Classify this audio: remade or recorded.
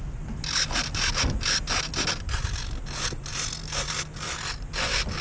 recorded